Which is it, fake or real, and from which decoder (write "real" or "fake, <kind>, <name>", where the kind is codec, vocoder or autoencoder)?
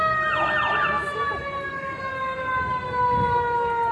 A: real